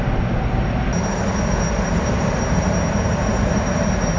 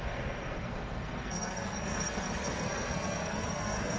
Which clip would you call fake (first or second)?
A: second